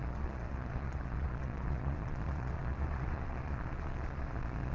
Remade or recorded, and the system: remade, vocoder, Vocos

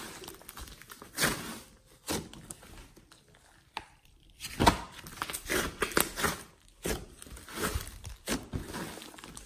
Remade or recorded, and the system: recorded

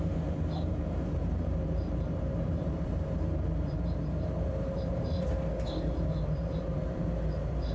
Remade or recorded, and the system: remade, vocoder, BigVGAN v2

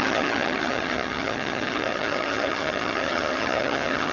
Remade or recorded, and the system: remade, vocoder, HiFi-GAN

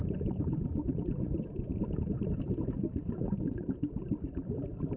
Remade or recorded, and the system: recorded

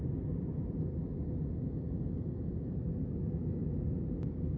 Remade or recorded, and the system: recorded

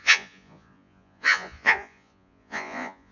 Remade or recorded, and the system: remade, vocoder, Vocos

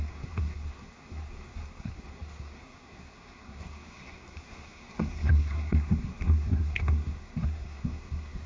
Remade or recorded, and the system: remade, codec, SNAC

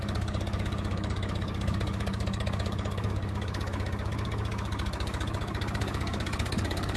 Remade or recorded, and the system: remade, codec, DAC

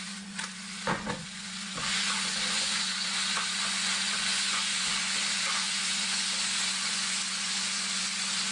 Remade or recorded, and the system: remade, vocoder, Vocos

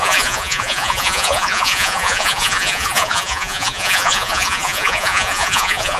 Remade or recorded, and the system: remade, vocoder, Vocos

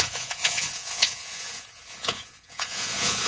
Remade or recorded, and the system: remade, vocoder, Vocos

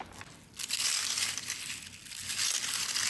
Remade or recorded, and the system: recorded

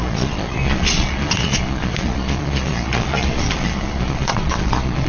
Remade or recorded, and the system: remade, vocoder, Vocos